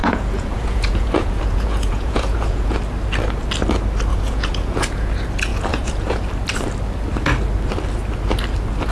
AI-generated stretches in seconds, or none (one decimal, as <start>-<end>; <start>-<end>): 0.0-2.8; 4.1-5.1; 5.5-6.2